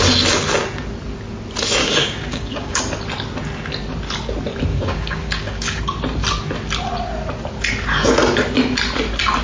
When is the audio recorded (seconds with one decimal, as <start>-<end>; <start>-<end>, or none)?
0.0-1.8; 2.8-4.7; 5.8-9.4